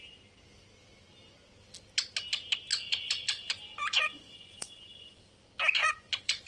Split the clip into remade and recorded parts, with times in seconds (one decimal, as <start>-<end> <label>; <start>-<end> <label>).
0.0-2.7 recorded; 2.7-5.2 remade; 5.2-5.8 recorded; 5.8-6.5 remade

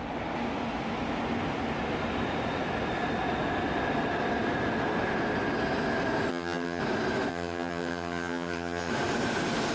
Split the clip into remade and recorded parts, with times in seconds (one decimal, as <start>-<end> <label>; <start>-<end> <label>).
0.0-6.3 recorded; 6.3-6.8 remade; 6.8-7.3 recorded; 7.3-8.9 remade; 8.9-9.7 recorded

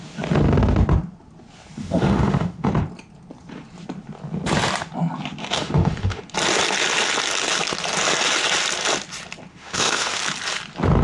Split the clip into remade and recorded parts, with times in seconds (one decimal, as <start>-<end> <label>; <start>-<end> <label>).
0.0-1.8 recorded; 1.8-2.7 remade; 2.7-5.4 recorded; 5.4-6.2 remade; 6.2-9.5 recorded; 9.5-10.2 remade; 10.2-11.0 recorded

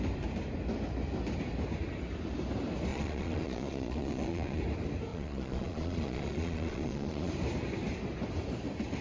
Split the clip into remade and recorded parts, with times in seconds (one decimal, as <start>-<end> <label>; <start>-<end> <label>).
0.0-2.9 recorded; 2.9-4.6 remade; 4.6-5.1 recorded; 5.1-7.3 remade; 7.3-9.0 recorded